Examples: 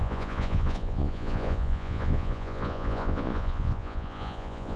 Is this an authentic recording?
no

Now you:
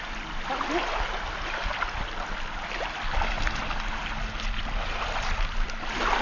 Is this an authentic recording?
yes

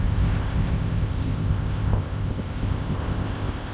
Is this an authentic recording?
no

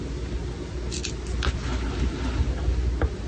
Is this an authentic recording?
yes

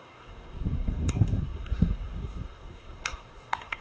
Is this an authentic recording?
no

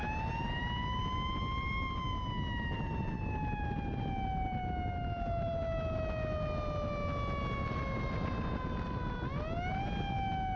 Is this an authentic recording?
yes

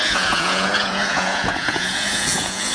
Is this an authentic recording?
no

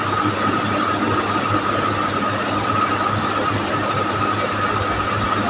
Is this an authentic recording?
yes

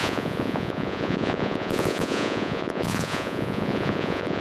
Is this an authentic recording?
no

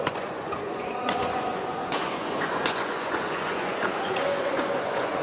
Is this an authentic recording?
no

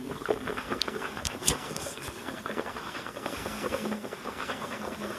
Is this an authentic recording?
no